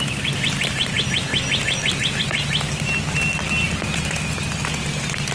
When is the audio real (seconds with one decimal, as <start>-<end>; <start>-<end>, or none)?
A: 0.0-5.3